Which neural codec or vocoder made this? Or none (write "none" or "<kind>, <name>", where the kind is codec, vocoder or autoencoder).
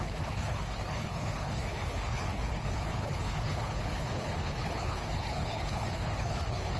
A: codec, HILCodec